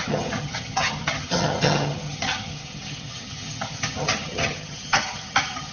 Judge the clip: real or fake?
fake